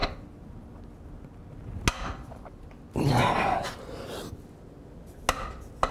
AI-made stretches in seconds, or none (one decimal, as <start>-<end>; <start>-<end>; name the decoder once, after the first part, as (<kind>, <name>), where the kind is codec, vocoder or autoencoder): none